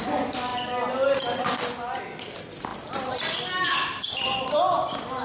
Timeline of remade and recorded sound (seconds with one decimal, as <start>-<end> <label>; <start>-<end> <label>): 0.0-2.7 recorded; 2.7-3.3 remade; 3.3-3.7 recorded; 3.7-4.6 remade; 4.6-5.2 recorded

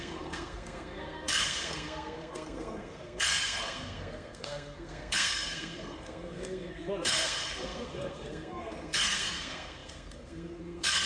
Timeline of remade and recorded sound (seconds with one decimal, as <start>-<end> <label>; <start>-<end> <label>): 0.0-11.1 remade

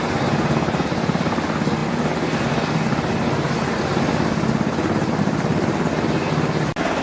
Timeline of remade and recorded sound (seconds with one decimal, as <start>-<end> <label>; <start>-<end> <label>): 0.0-7.0 recorded

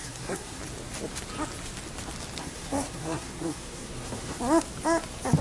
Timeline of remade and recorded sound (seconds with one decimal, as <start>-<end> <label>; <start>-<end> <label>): 0.0-0.6 remade; 0.6-2.4 recorded; 2.4-4.4 remade; 4.4-5.4 recorded

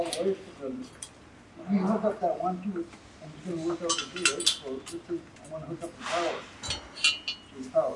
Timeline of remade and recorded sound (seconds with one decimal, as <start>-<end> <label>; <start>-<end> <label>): 0.0-8.0 recorded

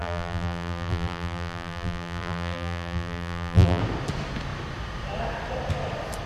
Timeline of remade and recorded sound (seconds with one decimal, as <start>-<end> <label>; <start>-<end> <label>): 0.0-3.8 remade; 3.8-6.3 recorded